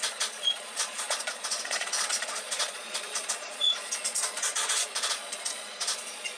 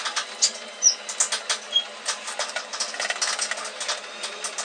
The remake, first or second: first